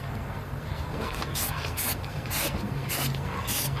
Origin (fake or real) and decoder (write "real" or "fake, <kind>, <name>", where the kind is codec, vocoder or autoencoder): fake, codec, SNAC